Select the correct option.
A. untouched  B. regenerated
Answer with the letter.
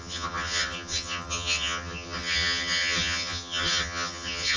B